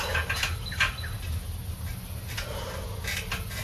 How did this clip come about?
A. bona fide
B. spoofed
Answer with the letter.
A